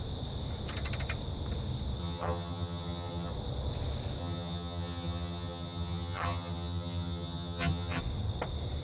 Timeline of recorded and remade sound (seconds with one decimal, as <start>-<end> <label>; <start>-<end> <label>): 0.0-2.0 recorded; 2.0-3.3 remade; 3.3-4.2 recorded; 4.2-8.0 remade; 8.0-8.8 recorded